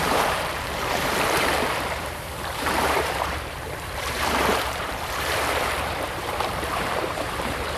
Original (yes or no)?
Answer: no